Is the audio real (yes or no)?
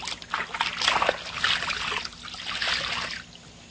yes